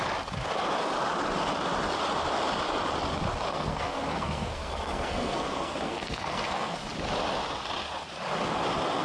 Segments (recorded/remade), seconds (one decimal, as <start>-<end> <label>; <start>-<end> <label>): 0.0-3.5 recorded; 3.5-6.8 remade; 6.8-9.0 recorded